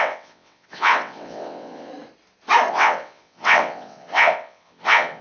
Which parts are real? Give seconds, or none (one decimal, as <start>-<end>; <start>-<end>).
1.9-2.7